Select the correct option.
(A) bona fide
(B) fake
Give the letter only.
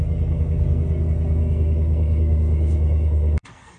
B